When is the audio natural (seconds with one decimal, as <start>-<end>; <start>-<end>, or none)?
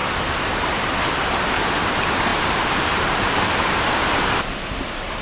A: 0.9-2.3; 4.4-5.2